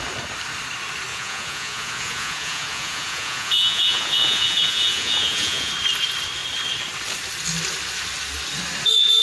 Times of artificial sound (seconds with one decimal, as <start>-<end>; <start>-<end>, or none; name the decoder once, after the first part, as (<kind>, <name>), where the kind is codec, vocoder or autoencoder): 1.1-5.7 (vocoder, Vocos)